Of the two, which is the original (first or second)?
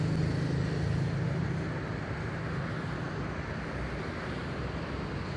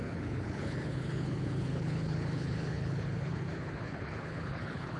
first